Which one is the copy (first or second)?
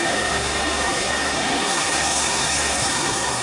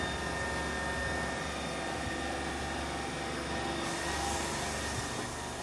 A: first